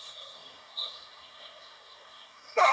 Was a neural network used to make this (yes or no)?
yes